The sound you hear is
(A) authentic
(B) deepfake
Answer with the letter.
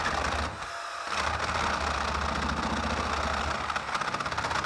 A